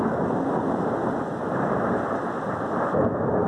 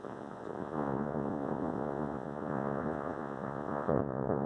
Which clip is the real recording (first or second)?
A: first